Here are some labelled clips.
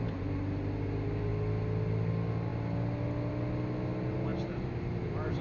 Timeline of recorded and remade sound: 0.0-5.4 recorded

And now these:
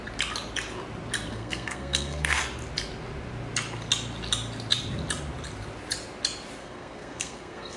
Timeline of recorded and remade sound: 0.0-1.3 recorded; 1.3-2.4 remade; 2.4-6.6 recorded; 6.6-7.8 remade